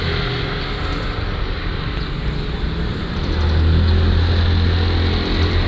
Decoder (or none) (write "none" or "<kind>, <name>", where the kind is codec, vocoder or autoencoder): none